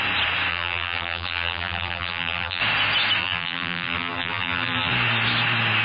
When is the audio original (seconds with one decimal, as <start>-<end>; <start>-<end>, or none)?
0.0-0.5; 2.6-3.2; 4.9-5.8